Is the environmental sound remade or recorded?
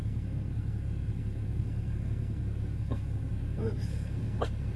remade